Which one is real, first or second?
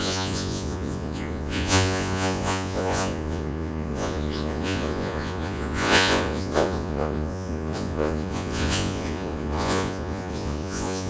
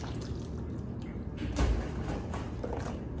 second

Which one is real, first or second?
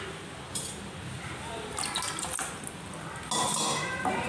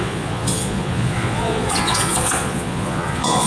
first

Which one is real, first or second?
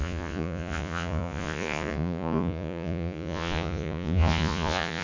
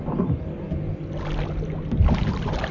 second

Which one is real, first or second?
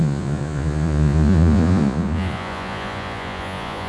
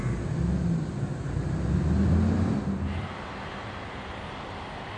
second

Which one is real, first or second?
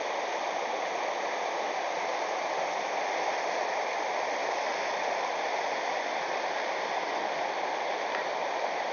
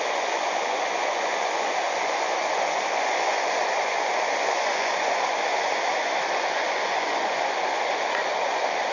first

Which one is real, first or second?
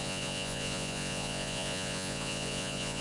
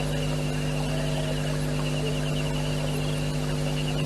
second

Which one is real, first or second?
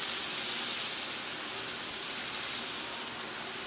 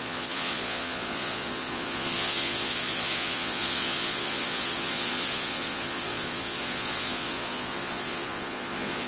first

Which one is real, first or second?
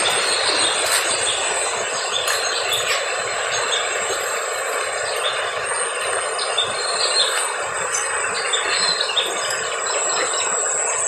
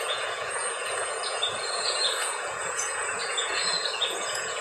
first